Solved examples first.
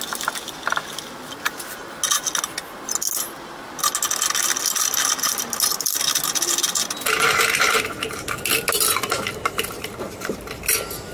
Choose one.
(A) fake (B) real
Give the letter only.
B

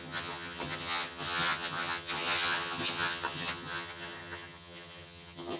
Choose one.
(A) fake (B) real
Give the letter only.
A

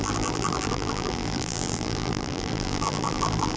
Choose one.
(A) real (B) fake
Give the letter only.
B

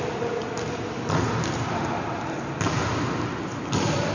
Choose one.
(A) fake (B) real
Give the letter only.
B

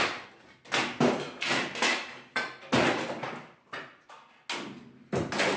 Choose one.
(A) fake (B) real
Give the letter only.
B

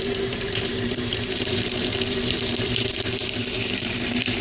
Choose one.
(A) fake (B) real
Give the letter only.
A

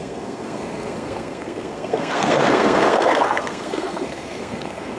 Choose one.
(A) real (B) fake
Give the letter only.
B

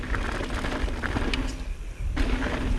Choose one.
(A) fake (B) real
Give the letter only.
B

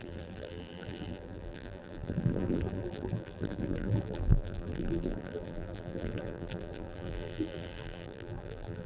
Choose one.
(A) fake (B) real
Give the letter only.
A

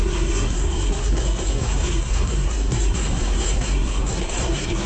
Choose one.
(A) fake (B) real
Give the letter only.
A